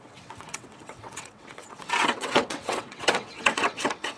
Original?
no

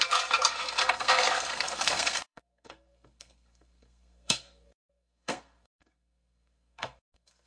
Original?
no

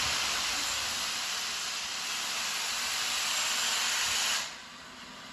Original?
no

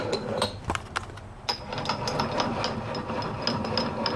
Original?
yes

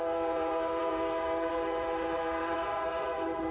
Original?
no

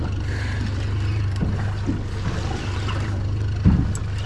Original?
yes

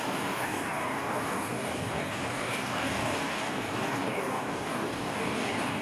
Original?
no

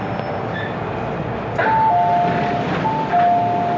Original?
yes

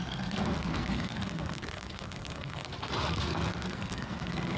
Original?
no